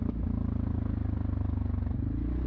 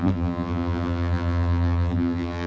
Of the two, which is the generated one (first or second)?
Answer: second